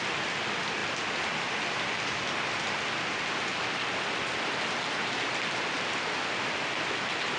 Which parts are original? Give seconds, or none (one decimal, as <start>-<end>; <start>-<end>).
0.0-7.4